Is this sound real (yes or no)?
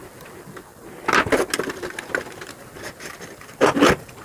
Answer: yes